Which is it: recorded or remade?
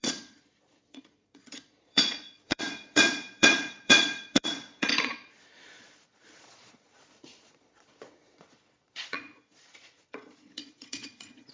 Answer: remade